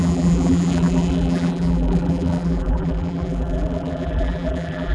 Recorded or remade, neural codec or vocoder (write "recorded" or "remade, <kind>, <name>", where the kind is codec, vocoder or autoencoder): remade, vocoder, BigVGAN v2